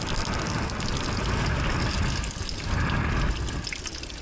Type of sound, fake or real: real